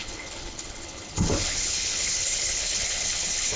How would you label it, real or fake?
fake